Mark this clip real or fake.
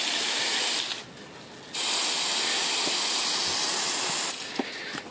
real